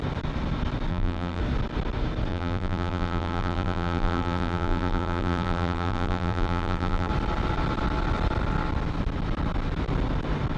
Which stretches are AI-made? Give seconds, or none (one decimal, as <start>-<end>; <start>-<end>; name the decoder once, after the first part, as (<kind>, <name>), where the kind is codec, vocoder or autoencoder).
0.9-1.4 (vocoder, BigVGAN v2); 2.3-7.1